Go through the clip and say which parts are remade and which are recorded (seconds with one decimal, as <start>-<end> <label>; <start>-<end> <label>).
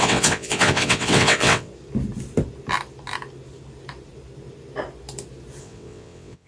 0.0-1.7 remade; 1.7-5.6 recorded; 5.6-6.5 remade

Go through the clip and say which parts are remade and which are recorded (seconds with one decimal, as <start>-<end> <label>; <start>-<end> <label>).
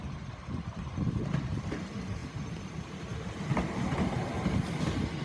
0.0-5.2 recorded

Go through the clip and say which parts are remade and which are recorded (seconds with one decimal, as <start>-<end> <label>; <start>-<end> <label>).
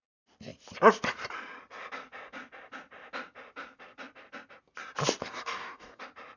0.0-5.2 recorded; 5.2-6.0 remade; 6.0-6.4 recorded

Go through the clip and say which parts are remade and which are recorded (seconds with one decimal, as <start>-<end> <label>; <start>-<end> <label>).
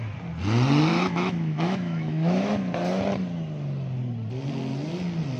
0.0-0.9 recorded; 0.9-2.5 remade; 2.5-5.4 recorded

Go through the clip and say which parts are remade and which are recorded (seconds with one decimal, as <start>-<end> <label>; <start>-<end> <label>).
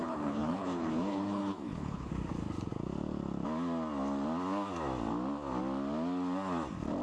0.0-2.1 remade; 2.1-7.0 recorded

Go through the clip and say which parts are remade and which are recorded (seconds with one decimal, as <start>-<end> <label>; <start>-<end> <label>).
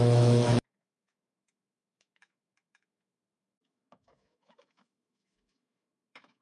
0.0-6.4 remade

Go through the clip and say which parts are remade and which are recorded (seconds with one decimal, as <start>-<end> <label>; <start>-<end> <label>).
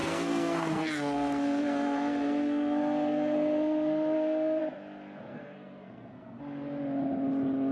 0.0-4.6 remade; 4.6-5.3 recorded; 5.3-6.4 remade; 6.4-7.7 recorded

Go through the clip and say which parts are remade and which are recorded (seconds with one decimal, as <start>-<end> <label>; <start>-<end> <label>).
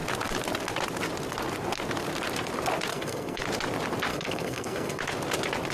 0.0-2.9 recorded; 2.9-3.4 remade; 3.4-4.1 recorded; 4.1-5.0 remade; 5.0-5.7 recorded